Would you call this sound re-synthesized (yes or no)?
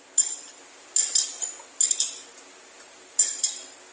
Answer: yes